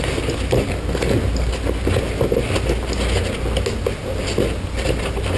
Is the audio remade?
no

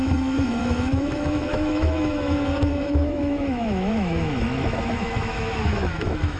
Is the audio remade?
yes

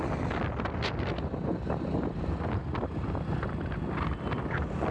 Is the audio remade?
no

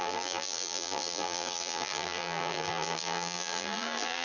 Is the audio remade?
yes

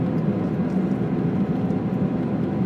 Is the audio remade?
no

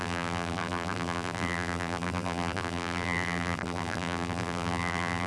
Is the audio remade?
yes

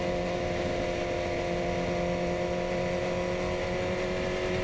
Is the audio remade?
no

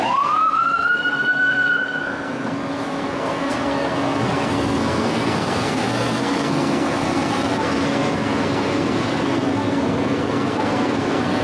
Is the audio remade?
yes